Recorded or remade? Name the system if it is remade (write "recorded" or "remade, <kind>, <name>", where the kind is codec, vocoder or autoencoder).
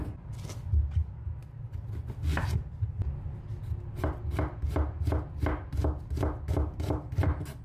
recorded